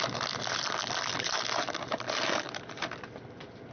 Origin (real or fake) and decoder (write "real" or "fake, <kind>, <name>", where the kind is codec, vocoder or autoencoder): real